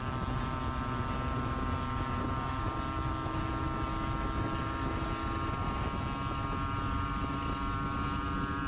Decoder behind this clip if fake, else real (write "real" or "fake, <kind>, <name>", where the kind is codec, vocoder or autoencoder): real